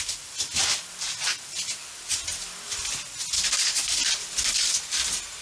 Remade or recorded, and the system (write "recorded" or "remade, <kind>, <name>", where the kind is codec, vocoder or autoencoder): recorded